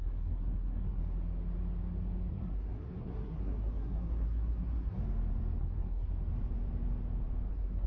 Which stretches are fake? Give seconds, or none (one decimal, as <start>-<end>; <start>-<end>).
0.0-1.0; 2.3-5.0; 5.6-6.1; 7.5-7.9